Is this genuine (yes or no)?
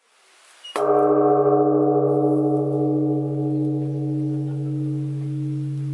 yes